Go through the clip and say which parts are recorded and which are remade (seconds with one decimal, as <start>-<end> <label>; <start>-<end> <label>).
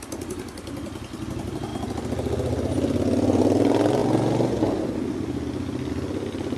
0.0-6.6 recorded